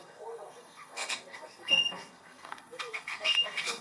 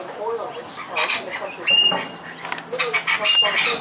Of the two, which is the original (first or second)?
second